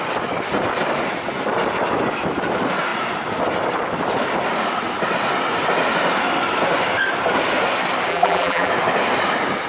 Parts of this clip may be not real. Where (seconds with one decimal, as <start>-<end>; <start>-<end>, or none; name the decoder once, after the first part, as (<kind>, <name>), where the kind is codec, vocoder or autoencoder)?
8.1-8.7 (vocoder, BigVGAN v2)